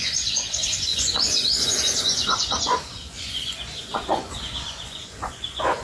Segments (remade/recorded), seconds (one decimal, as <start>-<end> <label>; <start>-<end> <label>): 0.0-5.8 remade